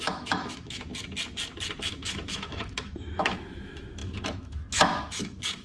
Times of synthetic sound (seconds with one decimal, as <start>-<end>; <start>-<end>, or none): 0.0-0.9; 1.8-5.6